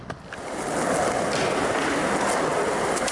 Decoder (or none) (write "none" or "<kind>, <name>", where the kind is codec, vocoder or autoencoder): none